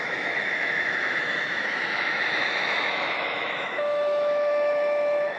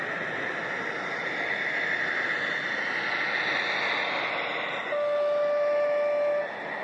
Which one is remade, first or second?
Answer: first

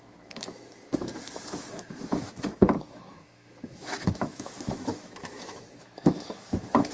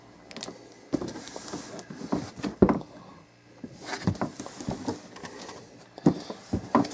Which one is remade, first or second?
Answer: first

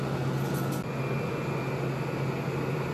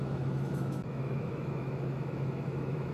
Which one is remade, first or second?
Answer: second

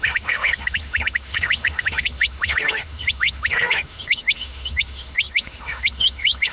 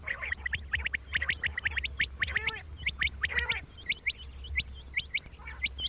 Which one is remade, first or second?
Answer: first